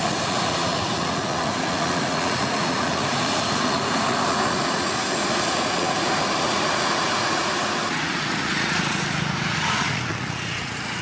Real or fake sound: fake